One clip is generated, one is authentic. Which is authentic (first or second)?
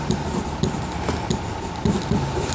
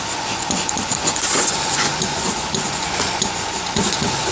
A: first